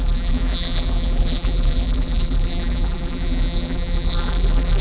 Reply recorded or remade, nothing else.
remade